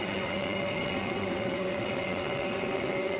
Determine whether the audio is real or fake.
fake